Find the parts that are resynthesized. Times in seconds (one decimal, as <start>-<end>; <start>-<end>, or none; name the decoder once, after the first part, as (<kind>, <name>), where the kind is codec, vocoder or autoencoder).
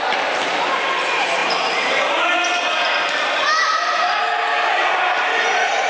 none